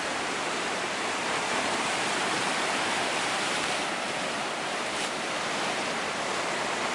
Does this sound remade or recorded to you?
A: remade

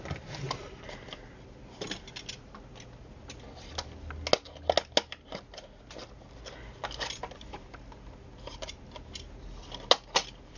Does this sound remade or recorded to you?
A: recorded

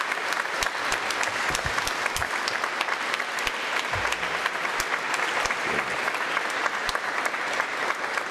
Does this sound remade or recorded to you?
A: recorded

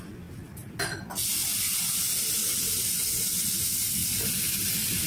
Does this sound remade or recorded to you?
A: recorded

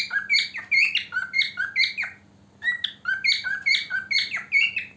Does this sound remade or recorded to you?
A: recorded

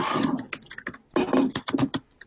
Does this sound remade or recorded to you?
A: recorded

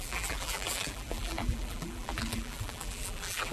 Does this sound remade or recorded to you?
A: remade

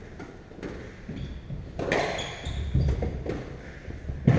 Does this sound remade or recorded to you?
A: recorded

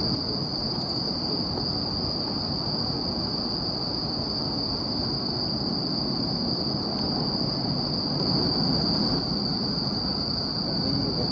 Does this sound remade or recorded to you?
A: recorded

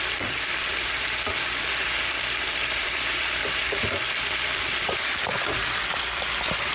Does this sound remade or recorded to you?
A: remade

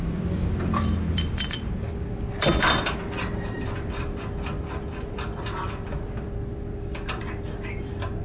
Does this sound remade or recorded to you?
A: remade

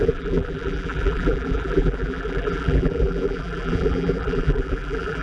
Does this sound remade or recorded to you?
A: remade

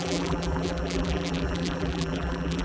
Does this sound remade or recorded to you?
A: remade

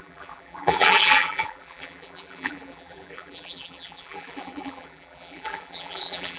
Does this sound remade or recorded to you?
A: remade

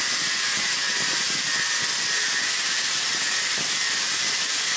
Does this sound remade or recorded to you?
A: remade